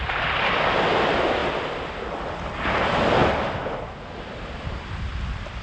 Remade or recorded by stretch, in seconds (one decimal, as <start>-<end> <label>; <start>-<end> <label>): 0.0-5.6 recorded